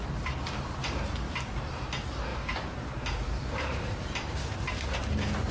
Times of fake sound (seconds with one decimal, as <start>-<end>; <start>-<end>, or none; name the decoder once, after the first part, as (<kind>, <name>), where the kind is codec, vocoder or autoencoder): 0.8-1.3 (vocoder, BigVGAN v2); 2.3-5.0